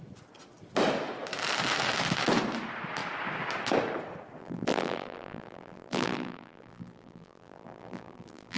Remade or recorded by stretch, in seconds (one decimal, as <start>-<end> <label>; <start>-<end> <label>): 0.0-4.4 recorded; 4.4-8.6 remade